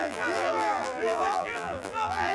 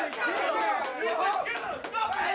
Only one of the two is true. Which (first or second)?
second